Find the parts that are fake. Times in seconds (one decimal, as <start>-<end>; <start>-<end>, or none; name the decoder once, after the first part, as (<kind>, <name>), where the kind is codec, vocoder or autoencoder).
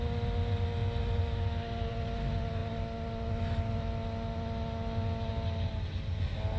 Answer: none